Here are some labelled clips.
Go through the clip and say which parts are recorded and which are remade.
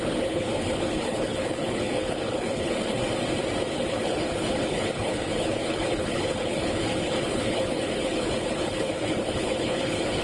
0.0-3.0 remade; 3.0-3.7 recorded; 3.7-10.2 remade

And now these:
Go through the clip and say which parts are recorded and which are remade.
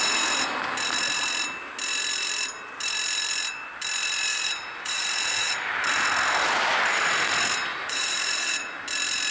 0.0-4.3 recorded; 4.3-5.7 remade; 5.7-7.7 recorded; 7.7-8.7 remade; 8.7-9.3 recorded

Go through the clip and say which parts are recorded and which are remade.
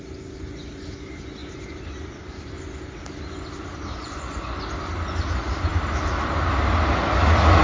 0.0-4.0 recorded; 4.0-4.6 remade; 4.6-7.6 recorded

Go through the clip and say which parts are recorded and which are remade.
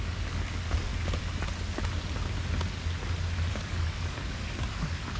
0.0-0.9 remade; 0.9-3.5 recorded; 3.5-5.2 remade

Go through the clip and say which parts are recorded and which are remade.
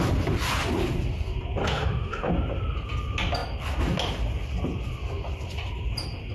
0.0-1.6 recorded; 1.6-2.3 remade; 2.3-6.3 recorded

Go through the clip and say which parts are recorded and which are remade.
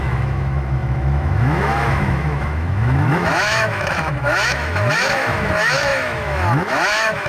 0.0-7.3 remade